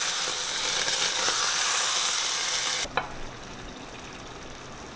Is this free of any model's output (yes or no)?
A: yes